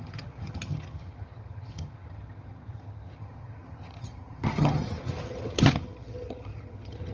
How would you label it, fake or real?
fake